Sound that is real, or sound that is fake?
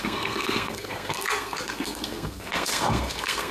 fake